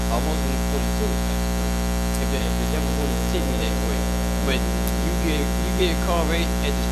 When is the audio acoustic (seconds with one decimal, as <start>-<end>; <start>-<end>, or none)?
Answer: 0.0-2.4; 3.6-6.9